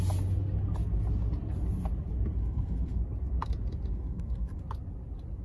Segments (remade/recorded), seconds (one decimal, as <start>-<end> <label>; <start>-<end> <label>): 0.0-2.4 recorded; 2.4-3.0 remade; 3.0-3.9 recorded; 3.9-4.6 remade; 4.6-5.4 recorded